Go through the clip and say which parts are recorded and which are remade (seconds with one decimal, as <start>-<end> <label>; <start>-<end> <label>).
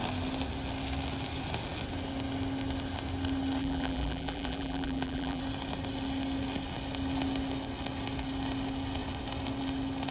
0.0-3.6 recorded; 3.6-5.4 remade; 5.4-10.1 recorded